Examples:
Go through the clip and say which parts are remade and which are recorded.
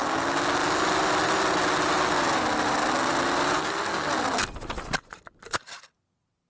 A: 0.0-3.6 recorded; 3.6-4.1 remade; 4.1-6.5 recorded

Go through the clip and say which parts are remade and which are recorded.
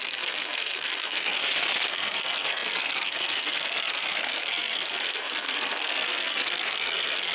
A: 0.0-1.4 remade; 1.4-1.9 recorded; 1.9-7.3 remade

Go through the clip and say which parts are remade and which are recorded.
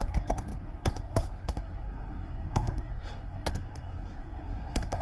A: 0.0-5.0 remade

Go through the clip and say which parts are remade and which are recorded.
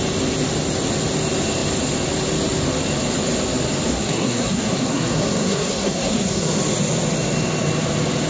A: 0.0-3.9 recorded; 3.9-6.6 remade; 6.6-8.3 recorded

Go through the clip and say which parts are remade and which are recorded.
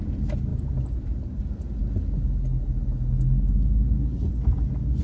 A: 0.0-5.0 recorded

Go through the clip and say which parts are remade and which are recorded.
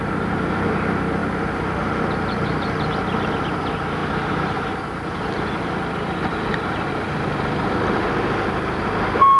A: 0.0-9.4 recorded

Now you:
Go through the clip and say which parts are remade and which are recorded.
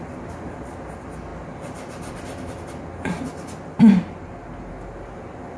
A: 0.0-5.6 recorded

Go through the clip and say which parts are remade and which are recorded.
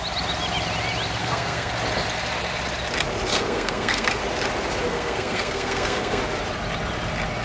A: 0.0-1.2 recorded; 1.2-1.7 remade; 1.7-3.3 recorded; 3.3-4.2 remade; 4.2-4.9 recorded; 4.9-6.2 remade; 6.2-7.4 recorded